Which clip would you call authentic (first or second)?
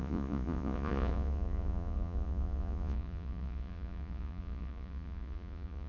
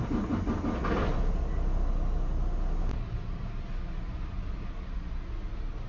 second